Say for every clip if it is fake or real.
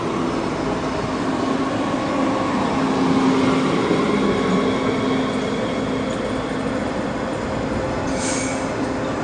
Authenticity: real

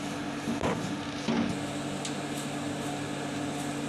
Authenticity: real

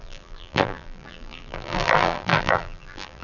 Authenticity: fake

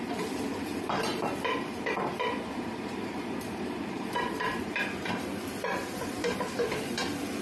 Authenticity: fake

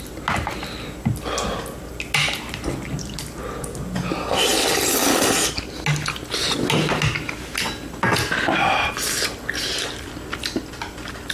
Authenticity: real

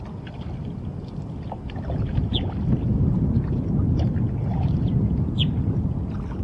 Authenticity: real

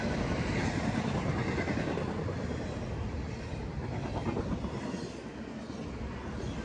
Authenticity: real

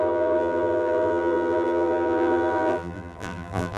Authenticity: fake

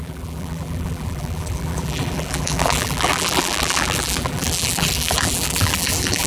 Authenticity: fake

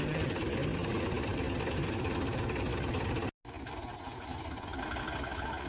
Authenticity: real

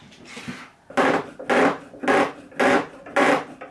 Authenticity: real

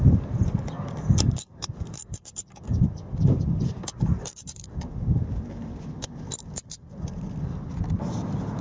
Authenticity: fake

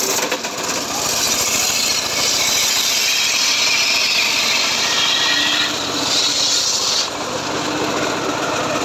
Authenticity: fake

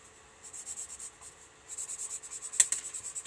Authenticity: real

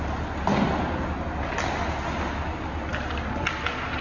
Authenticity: real